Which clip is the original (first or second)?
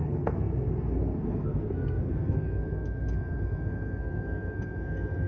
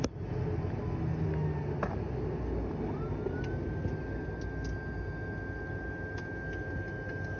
second